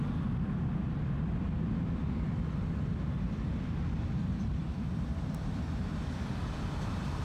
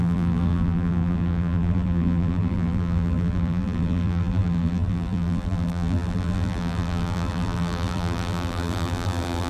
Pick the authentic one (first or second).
first